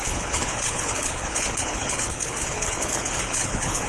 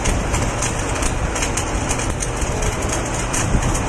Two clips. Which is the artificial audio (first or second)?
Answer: first